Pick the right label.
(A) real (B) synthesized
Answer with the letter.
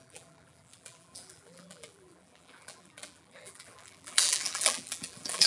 B